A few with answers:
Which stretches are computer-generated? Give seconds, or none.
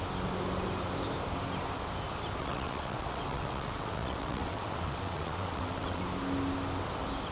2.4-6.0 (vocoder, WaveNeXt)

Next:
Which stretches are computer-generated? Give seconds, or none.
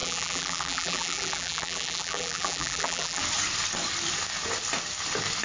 0.0-3.2 (vocoder, BigVGAN v2)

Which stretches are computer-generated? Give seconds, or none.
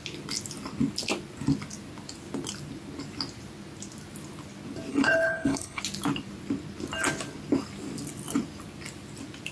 4.9-5.8 (codec, HILCodec)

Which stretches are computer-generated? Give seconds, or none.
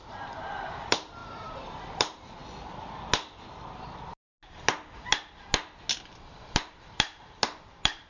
0.0-2.4 (vocoder, BigVGAN v2); 6.2-8.1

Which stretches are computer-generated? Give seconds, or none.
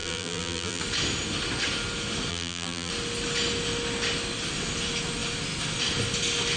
0.0-0.8 (vocoder, BigVGAN v2); 2.3-2.9